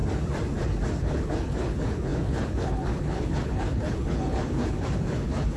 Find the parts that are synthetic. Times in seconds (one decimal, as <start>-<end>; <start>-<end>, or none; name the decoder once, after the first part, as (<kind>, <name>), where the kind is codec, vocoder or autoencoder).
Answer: 1.0-5.6 (codec, HILCodec)